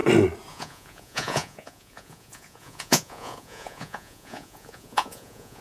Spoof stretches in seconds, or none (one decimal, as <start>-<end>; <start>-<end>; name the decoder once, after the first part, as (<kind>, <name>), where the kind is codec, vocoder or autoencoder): 0.5-5.6 (vocoder, Vocos)